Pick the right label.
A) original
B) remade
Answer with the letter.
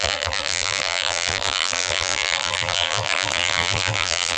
B